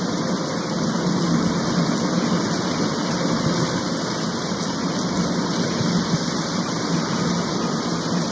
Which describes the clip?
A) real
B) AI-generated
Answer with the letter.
A